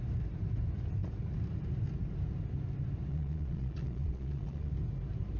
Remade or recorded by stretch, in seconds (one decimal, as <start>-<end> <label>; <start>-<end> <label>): 0.0-3.1 recorded; 3.1-4.7 remade; 4.7-5.4 recorded